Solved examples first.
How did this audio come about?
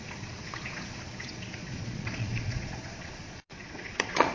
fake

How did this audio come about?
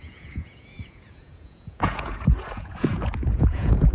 fake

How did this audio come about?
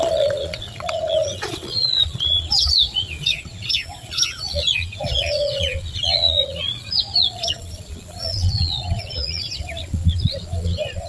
fake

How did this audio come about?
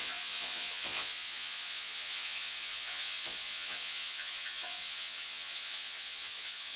fake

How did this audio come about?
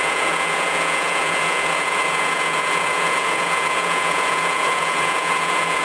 fake